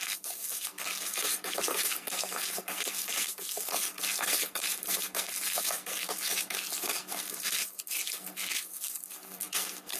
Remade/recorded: remade